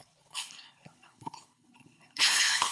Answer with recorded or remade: remade